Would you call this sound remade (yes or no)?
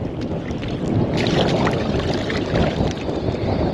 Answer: no